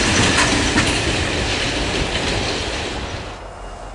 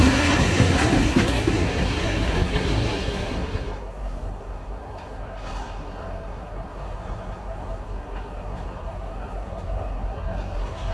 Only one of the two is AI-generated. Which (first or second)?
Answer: second